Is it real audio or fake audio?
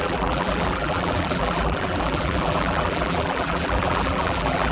fake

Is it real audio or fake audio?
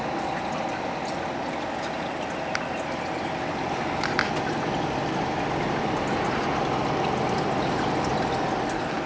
real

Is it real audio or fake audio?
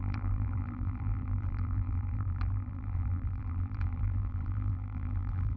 fake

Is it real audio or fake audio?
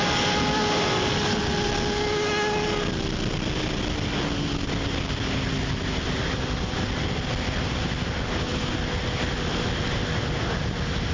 real